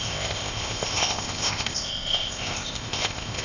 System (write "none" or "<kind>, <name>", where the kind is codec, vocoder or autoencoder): codec, ZipCodec